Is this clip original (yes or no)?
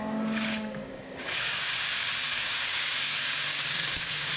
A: no